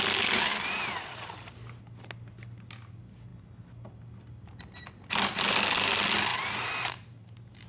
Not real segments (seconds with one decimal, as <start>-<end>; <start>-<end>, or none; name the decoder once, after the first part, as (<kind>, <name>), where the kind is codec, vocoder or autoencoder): 0.5-1.6 (vocoder, BigVGAN v2); 6.3-7.7